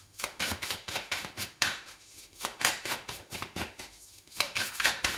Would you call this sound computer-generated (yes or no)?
yes